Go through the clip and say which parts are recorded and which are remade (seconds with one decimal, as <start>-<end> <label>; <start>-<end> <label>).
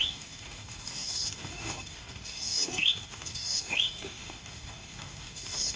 0.0-5.8 remade